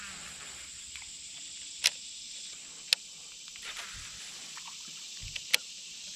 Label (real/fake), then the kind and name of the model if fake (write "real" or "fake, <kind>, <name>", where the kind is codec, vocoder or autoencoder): real